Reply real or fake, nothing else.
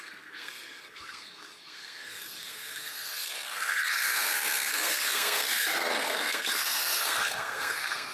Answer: fake